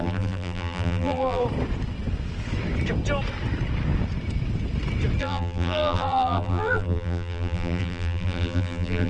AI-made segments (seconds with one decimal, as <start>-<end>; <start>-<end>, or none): 0.0-1.4; 5.2-9.1